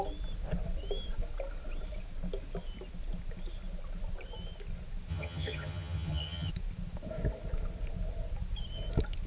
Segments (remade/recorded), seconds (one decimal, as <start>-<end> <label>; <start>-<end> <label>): 0.0-5.1 recorded; 5.1-6.5 remade; 6.5-9.3 recorded